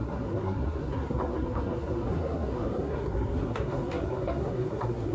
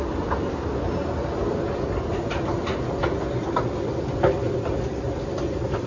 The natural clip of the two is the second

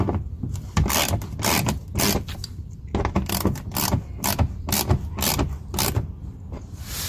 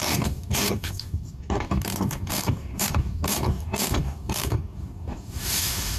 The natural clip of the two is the first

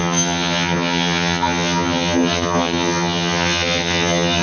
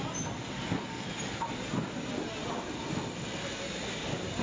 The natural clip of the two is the second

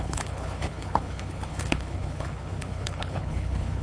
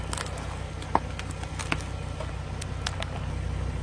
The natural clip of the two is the second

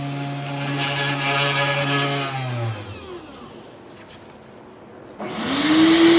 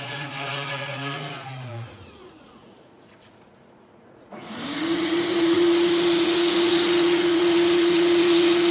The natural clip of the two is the first